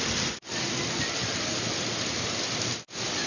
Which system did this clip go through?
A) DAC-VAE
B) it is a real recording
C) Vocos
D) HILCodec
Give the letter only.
B